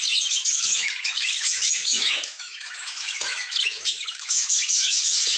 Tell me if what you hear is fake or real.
fake